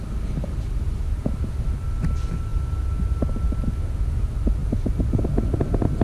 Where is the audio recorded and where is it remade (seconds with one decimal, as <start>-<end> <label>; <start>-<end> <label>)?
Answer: 0.0-6.0 recorded